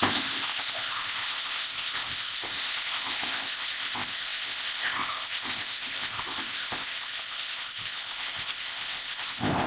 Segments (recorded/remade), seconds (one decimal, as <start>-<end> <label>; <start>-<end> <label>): 0.0-9.7 remade